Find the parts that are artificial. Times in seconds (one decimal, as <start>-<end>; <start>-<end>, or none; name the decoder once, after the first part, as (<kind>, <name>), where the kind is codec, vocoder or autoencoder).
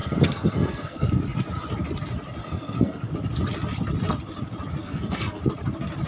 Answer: 0.0-1.2 (codec, SNAC); 2.4-3.1; 4.8-5.4